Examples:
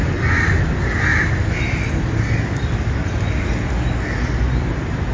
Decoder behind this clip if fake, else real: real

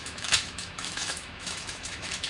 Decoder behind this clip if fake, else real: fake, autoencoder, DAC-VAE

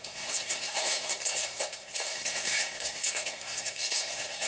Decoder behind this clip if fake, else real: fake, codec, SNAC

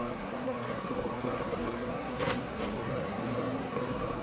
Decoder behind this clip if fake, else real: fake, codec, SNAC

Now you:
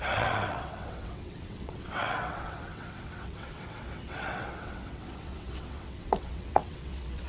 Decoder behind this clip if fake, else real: fake, vocoder, WaveNeXt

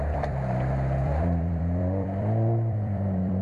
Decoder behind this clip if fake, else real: fake, vocoder, BigVGAN v2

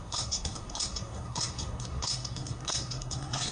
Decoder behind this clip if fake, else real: fake, codec, SNAC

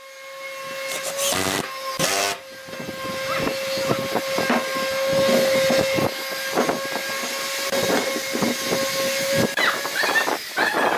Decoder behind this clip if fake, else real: real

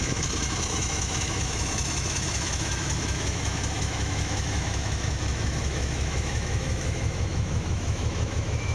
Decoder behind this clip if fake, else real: fake, autoencoder, DAC-VAE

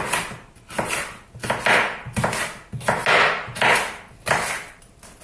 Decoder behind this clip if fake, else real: real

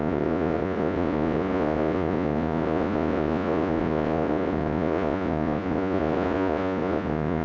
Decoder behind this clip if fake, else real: fake, vocoder, Vocos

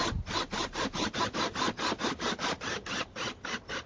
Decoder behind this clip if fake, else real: real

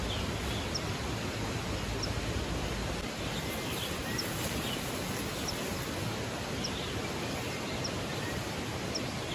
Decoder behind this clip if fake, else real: real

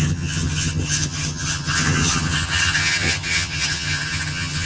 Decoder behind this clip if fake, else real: fake, vocoder, HiFi-GAN